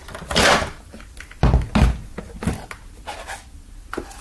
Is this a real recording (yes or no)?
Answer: yes